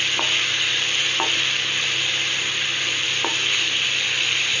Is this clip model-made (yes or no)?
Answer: no